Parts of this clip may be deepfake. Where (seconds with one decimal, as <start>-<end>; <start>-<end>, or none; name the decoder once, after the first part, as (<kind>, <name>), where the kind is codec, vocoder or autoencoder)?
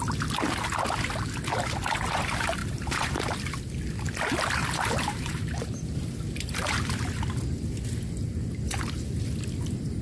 2.6-3.2 (vocoder, BigVGAN v2); 4.6-7.0